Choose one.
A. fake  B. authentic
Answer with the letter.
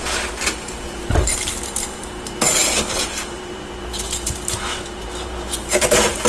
A